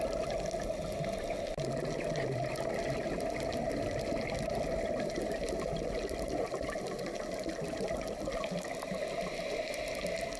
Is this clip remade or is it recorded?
recorded